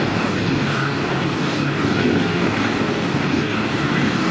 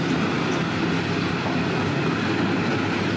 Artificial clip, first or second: first